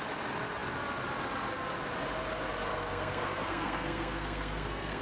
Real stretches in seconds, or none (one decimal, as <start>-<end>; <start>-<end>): 0.0-2.7